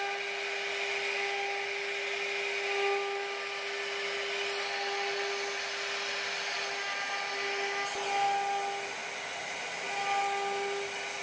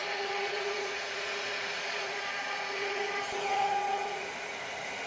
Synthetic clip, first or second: second